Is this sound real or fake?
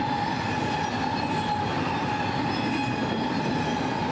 real